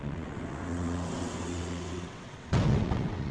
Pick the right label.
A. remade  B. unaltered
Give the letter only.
A